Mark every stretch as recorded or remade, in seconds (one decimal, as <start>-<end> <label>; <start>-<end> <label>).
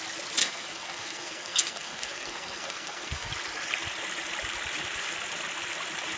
0.0-0.4 recorded; 0.4-3.3 remade; 3.3-6.2 recorded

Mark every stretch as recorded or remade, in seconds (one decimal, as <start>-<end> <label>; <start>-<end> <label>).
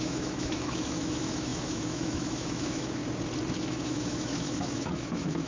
0.0-3.0 remade; 3.0-3.6 recorded; 3.6-5.5 remade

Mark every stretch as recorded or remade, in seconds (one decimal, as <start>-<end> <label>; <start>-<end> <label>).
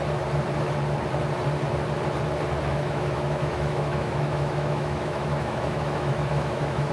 0.0-2.7 recorded; 2.7-6.9 remade